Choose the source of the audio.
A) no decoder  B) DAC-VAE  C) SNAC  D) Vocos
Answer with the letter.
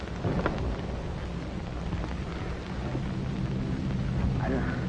A